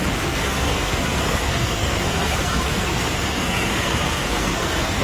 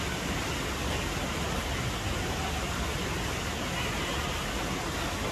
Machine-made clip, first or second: first